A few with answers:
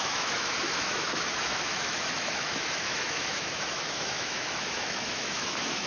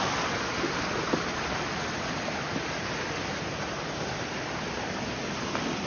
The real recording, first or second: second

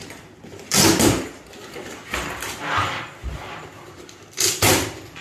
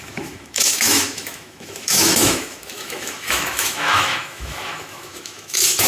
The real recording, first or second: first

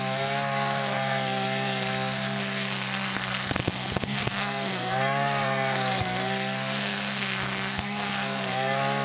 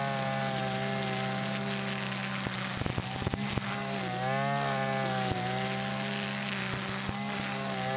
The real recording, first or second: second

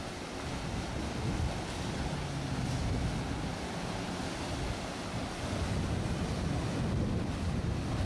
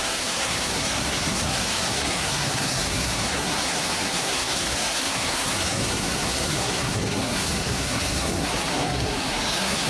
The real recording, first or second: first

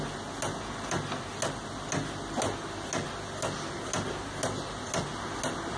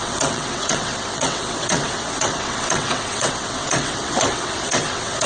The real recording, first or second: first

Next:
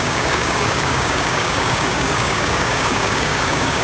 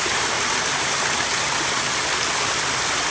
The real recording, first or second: second